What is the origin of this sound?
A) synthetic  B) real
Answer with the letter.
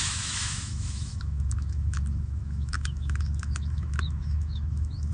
A